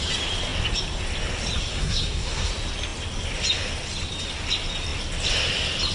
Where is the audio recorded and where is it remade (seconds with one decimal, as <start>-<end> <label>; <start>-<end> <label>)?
0.0-1.7 recorded; 1.7-2.5 remade; 2.5-5.9 recorded